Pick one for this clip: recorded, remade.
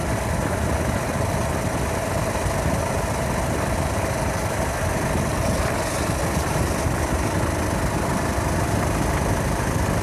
recorded